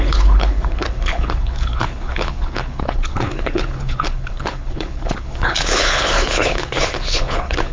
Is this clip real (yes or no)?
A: no